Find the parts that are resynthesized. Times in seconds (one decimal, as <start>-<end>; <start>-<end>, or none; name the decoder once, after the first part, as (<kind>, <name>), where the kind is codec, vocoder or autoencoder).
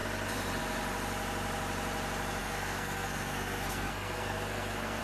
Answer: 2.4-5.0 (codec, SNAC)